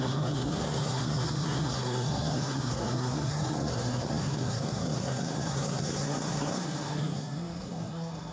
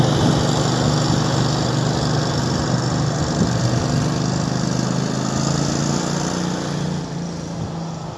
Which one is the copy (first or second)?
first